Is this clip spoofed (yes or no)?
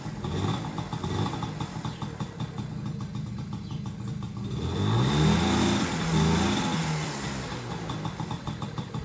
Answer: no